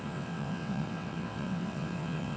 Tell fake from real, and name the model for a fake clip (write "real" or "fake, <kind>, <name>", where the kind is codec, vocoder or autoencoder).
fake, vocoder, WaveNeXt